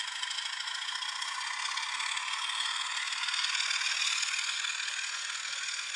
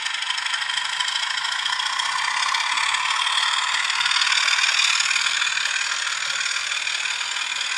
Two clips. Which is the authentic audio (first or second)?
second